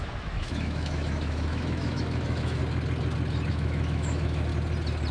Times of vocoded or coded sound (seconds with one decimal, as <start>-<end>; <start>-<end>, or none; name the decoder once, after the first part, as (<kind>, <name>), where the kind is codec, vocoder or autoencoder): 0.0-2.6 (autoencoder, DAC-VAE); 3.5-4.5